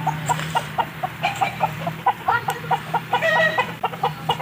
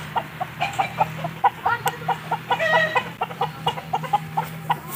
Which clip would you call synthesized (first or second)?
first